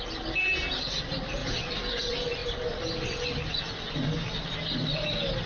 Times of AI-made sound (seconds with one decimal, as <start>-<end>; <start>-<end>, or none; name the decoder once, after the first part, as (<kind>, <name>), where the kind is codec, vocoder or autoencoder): none